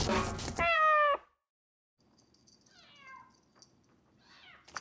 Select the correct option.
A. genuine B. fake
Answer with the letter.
A